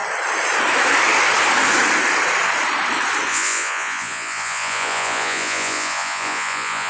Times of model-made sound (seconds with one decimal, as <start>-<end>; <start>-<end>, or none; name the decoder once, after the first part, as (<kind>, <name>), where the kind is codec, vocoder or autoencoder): 3.3-6.9 (vocoder, Vocos)